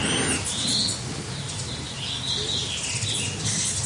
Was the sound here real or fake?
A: real